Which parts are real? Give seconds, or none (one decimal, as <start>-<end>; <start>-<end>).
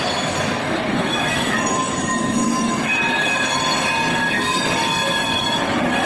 0.0-0.6; 3.6-4.1